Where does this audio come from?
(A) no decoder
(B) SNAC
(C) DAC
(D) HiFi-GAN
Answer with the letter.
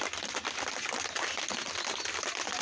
A